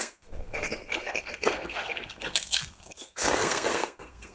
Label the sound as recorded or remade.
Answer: remade